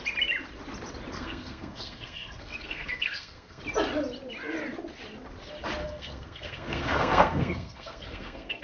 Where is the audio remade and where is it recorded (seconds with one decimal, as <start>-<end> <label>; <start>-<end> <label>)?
0.0-1.1 recorded; 1.1-3.6 remade; 3.6-5.8 recorded; 5.8-8.6 remade